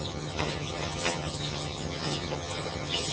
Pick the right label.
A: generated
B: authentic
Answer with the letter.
A